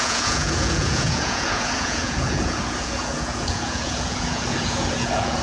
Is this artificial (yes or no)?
yes